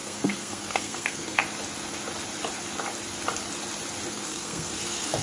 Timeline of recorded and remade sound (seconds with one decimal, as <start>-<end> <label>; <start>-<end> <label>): 0.0-1.4 remade; 1.4-4.1 recorded; 4.1-5.2 remade